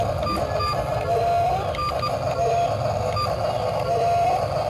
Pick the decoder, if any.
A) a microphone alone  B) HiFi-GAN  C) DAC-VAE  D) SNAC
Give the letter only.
A